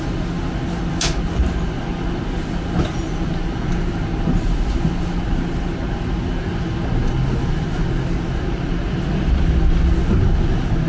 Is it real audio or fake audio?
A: real